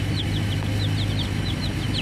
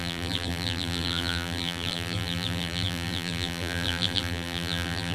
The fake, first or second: second